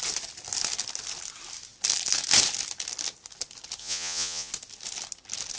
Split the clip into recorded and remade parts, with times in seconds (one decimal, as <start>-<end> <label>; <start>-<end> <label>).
0.0-3.8 recorded; 3.8-4.5 remade; 4.5-5.6 recorded